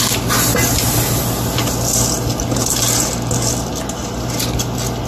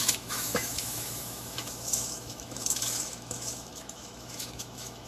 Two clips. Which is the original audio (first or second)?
first